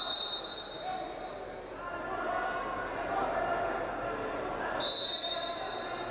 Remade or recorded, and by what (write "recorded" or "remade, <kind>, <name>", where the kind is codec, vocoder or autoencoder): recorded